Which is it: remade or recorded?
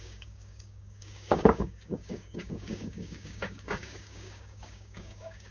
remade